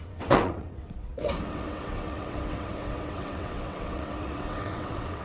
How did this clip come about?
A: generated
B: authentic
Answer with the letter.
A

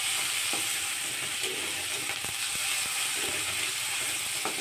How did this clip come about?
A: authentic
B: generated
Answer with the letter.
A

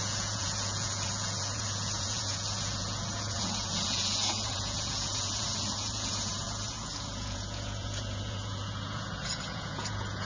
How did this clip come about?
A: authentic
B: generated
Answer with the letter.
B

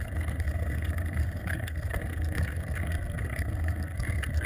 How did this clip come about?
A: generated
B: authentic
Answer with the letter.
A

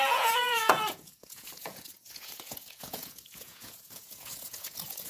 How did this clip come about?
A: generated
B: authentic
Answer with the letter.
A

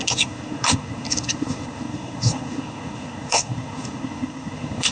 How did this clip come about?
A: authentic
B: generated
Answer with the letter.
B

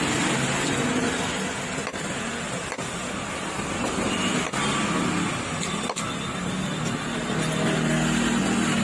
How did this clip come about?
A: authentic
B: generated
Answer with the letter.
A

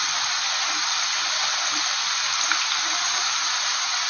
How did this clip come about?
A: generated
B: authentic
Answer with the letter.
B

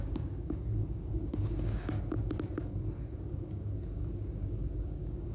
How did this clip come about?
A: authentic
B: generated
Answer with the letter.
B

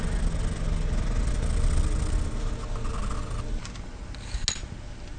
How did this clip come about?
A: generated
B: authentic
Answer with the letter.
B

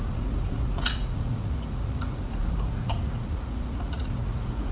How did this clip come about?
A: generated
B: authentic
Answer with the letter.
A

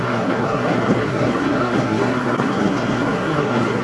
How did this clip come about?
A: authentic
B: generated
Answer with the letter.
B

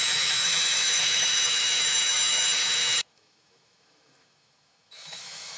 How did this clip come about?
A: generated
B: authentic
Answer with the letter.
A